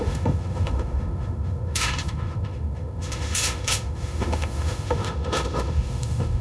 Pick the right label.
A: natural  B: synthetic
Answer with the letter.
B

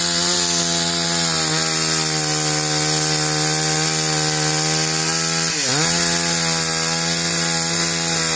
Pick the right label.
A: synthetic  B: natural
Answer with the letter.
B